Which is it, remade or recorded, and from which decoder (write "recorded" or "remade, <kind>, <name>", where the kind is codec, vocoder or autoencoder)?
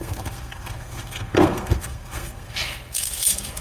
remade, codec, SNAC